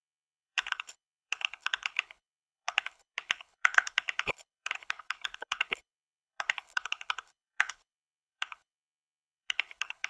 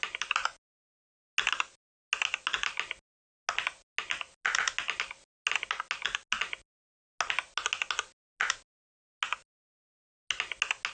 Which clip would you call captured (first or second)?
second